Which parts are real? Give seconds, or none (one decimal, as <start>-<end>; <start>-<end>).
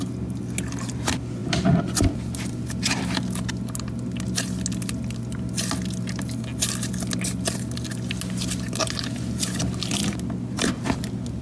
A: 0.0-11.4